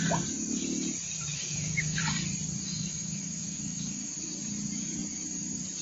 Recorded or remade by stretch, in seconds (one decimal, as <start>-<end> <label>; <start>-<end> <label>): 0.0-1.3 recorded; 1.3-2.0 remade; 2.0-2.7 recorded; 2.7-4.1 remade; 4.1-5.8 recorded